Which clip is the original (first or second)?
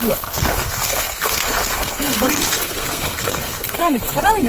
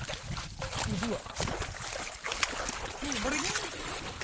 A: second